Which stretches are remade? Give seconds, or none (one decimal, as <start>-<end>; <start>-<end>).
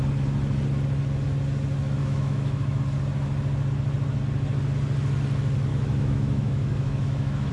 2.0-2.8; 5.7-7.5